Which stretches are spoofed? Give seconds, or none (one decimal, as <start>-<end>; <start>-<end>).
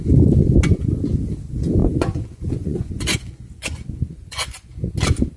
1.8-4.9